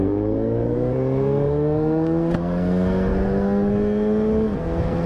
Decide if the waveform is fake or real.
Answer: fake